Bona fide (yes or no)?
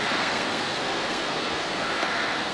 no